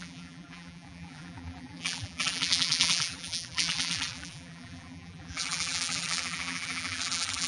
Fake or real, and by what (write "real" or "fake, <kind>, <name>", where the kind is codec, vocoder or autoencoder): fake, vocoder, BigVGAN v2